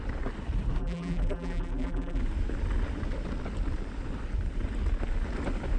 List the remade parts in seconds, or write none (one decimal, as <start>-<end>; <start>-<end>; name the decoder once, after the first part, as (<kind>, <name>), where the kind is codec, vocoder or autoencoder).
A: 0.8-2.2 (vocoder, BigVGAN v2)

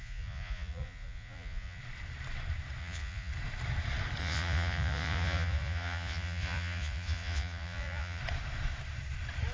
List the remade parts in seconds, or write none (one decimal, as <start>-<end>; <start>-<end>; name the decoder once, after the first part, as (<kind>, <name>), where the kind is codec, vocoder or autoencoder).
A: 0.0-1.8 (vocoder, Vocos); 2.8-3.3; 4.2-8.2

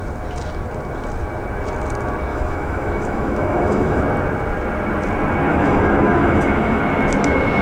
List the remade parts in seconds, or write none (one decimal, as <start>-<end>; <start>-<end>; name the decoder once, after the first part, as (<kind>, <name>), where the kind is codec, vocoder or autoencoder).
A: 2.3-4.0 (autoencoder, DAC-VAE); 5.5-6.8

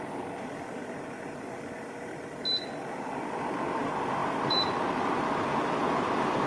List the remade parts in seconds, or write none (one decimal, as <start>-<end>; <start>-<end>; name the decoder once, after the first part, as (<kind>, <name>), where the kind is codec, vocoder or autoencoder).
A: 0.8-1.4 (vocoder, BigVGAN v2); 4.2-4.7; 5.5-6.5

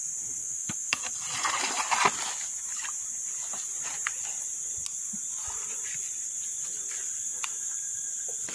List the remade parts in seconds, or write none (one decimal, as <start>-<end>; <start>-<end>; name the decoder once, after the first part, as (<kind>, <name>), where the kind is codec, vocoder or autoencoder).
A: 0.4-1.0 (autoencoder, DAC-VAE)

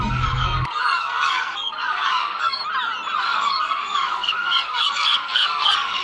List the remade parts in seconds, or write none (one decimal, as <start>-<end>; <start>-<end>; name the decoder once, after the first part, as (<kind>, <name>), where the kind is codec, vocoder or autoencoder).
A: 0.0-2.6 (codec, SNAC); 3.2-6.0